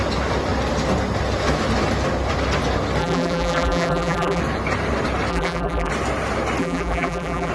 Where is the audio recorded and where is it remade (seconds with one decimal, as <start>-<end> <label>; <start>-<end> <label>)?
0.0-3.0 recorded; 3.0-4.4 remade; 4.4-5.3 recorded; 5.3-5.9 remade; 5.9-6.6 recorded; 6.6-7.5 remade